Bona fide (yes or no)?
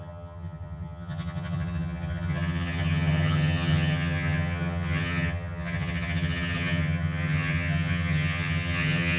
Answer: no